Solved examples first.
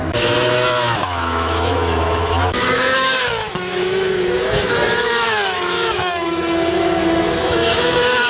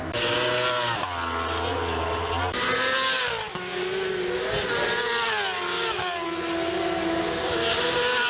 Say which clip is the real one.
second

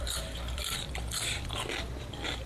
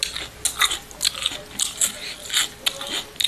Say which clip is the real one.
second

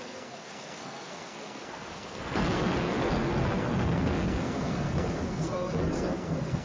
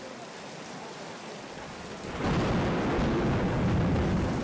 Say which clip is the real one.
second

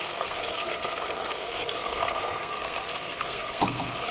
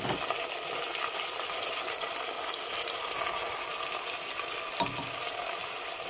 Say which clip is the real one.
second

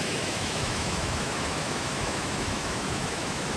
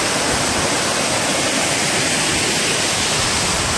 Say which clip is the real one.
second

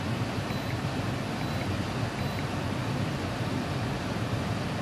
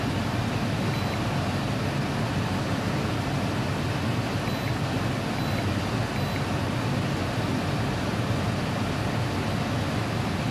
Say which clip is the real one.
second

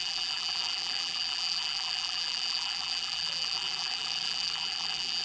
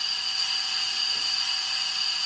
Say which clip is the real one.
second